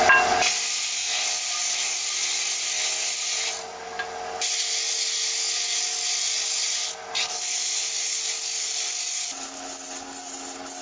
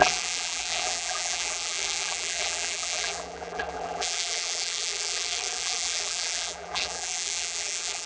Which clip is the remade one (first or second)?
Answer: second